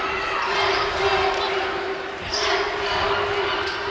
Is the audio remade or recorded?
recorded